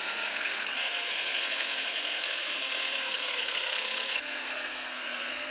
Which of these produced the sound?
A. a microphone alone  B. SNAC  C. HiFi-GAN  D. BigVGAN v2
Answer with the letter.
B